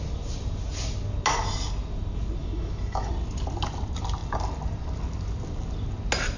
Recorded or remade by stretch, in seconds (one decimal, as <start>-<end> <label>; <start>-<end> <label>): 0.0-2.4 recorded; 2.4-3.1 remade; 3.1-6.4 recorded